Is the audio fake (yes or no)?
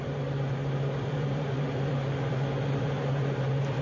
yes